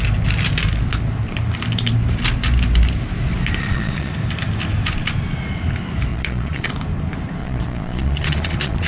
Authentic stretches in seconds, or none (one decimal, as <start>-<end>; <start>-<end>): 0.0-3.6; 4.1-6.1; 6.7-7.4